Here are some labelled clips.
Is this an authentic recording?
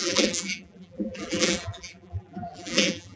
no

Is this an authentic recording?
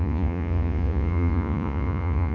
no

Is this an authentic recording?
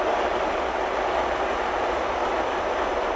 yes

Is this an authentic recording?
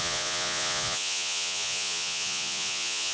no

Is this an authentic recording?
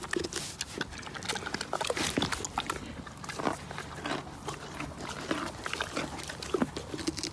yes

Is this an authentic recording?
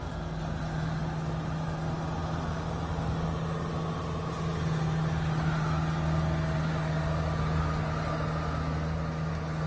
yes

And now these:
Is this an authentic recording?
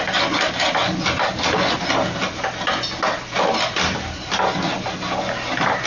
yes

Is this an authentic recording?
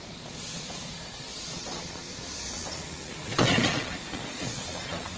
no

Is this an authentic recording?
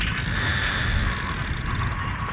yes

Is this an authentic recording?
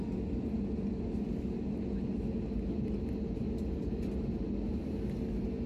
yes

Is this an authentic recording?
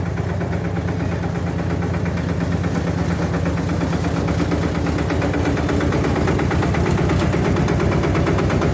yes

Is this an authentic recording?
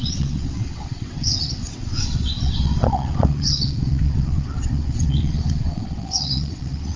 no